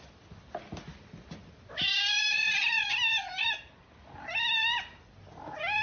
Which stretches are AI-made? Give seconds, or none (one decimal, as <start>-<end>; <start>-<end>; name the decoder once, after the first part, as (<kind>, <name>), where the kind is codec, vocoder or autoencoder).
none